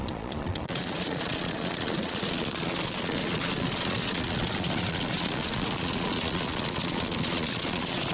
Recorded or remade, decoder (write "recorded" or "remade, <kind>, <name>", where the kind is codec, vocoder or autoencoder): remade, vocoder, Vocos